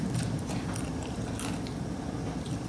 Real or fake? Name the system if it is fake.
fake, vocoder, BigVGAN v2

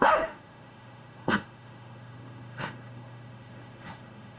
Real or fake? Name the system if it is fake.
fake, autoencoder, DAC-VAE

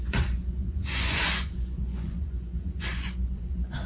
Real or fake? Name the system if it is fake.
fake, vocoder, Vocos